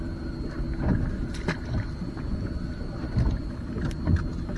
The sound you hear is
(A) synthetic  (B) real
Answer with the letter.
B